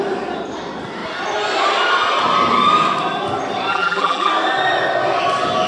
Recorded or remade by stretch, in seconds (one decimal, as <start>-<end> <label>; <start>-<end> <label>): 0.0-3.7 recorded; 3.7-4.3 remade; 4.3-5.7 recorded